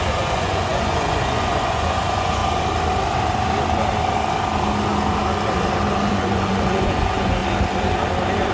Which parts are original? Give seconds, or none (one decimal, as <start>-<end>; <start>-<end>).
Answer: 2.4-6.1; 7.4-8.5